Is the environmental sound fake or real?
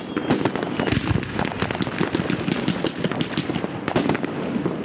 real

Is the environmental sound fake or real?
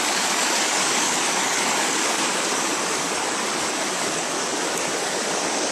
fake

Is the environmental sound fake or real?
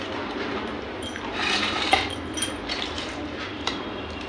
fake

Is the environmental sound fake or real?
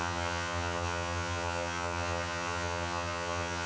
fake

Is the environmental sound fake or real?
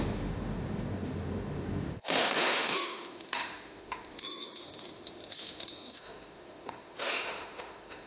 fake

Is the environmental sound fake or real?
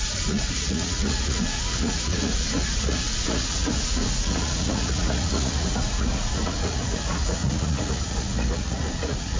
fake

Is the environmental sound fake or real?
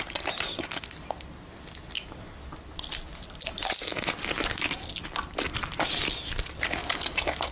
real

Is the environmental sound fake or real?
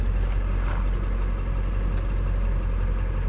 real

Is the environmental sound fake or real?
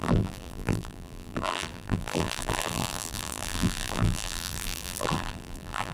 fake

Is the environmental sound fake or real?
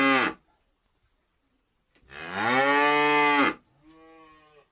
real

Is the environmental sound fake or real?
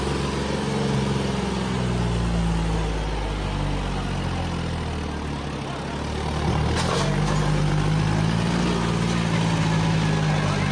real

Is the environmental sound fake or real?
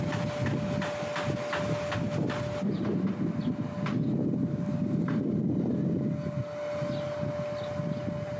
real